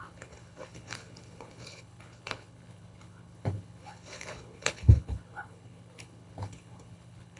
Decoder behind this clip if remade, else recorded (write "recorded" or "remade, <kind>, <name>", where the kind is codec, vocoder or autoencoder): remade, codec, HILCodec